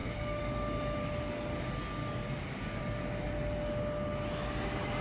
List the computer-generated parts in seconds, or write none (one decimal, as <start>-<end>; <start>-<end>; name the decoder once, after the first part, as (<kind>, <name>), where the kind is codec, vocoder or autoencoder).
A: 0.0-1.1 (codec, DAC); 2.0-2.8